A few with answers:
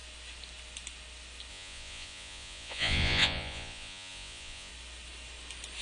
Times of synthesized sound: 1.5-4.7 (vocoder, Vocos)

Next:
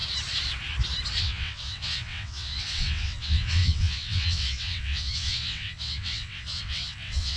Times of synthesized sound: 1.2-7.4 (vocoder, WaveNeXt)

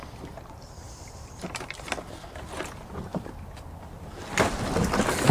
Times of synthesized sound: none

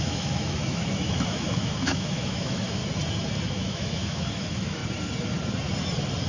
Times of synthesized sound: 0.0-2.8 (autoencoder, DAC-VAE); 3.5-4.8

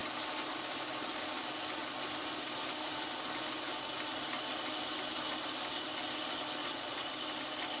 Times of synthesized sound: 6.6-7.1 (vocoder, Vocos)

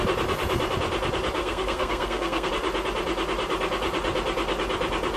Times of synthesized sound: 1.4-2.5 (codec, SNAC)